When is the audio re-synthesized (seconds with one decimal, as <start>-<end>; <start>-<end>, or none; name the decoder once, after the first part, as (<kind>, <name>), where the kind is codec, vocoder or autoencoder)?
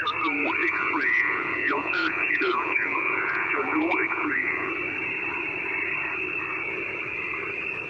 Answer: 0.6-4.7 (vocoder, Vocos)